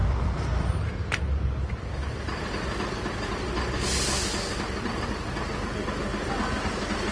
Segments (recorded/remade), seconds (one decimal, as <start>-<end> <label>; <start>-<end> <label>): 0.0-0.8 remade; 0.8-7.1 recorded